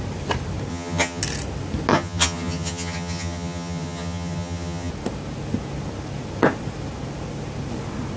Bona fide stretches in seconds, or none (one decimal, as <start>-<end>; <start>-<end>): 0.0-0.7; 1.2-1.9; 4.9-8.2